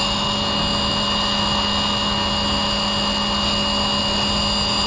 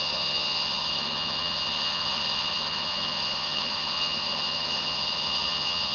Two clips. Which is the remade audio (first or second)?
second